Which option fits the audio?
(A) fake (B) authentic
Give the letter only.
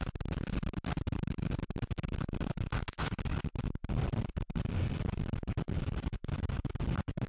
B